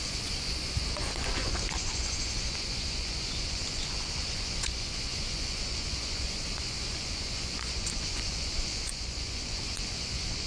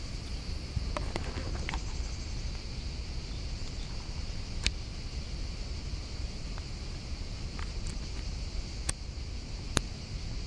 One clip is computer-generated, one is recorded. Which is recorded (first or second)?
second